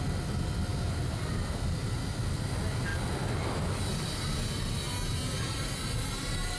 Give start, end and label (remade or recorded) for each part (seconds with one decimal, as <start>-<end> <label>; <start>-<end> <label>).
0.0-6.6 recorded